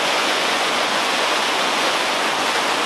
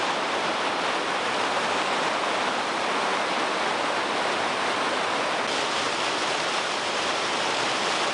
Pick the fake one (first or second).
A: first